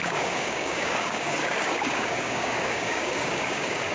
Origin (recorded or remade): remade